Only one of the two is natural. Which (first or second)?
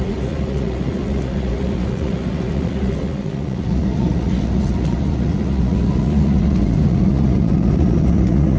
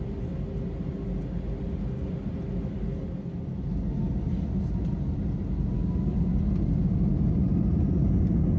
second